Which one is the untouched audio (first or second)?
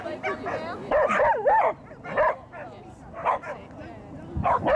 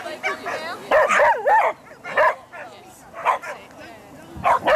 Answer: second